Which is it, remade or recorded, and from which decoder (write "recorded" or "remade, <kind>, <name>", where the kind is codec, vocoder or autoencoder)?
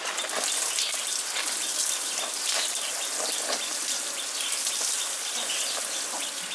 recorded